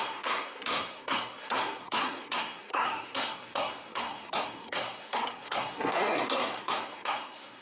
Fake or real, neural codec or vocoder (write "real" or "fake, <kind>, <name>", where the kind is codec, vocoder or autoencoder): fake, codec, SNAC